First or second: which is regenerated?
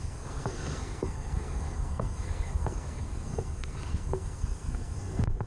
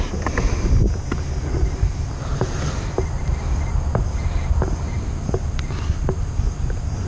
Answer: first